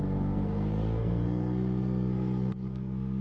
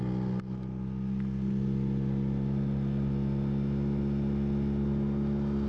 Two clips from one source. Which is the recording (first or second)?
second